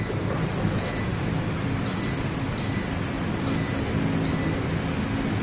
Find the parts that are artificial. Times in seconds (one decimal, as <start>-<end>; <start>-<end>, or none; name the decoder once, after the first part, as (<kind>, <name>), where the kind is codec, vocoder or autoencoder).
none